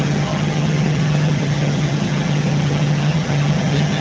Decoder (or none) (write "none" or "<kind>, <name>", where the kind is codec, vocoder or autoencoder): vocoder, HiFi-GAN